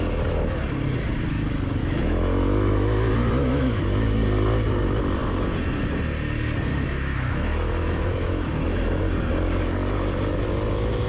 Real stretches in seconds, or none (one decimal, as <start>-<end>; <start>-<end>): 0.0-1.8; 3.8-6.7; 9.0-11.1